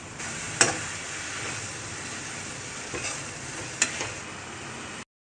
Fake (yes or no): no